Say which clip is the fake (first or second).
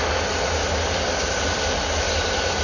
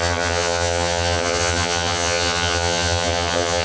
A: second